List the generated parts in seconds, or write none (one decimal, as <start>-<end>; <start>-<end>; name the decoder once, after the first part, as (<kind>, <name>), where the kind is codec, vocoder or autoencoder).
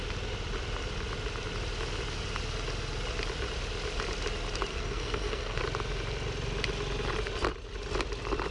4.7-5.6 (codec, SNAC)